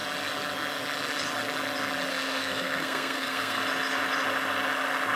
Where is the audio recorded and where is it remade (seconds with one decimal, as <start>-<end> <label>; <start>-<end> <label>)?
0.0-2.1 recorded; 2.1-3.6 remade; 3.6-5.2 recorded